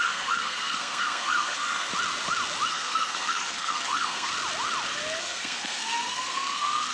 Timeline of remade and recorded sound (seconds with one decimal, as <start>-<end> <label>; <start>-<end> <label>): 0.0-1.9 remade; 1.9-2.7 recorded; 2.7-4.3 remade; 4.3-5.2 recorded; 5.2-6.9 remade